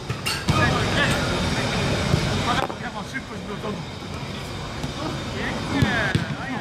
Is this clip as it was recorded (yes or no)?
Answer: yes